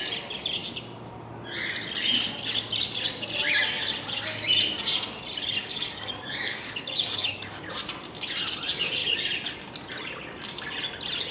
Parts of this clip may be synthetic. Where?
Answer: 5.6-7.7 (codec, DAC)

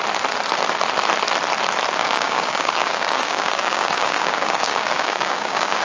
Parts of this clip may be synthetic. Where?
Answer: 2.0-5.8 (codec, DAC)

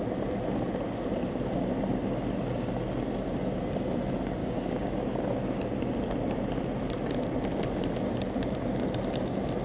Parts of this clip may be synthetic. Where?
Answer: 4.4-5.2 (codec, DAC)